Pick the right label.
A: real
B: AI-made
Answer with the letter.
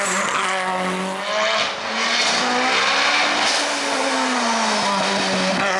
A